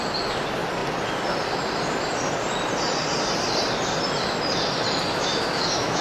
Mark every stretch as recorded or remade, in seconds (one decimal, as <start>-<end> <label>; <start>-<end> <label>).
0.0-5.1 recorded; 5.1-6.0 remade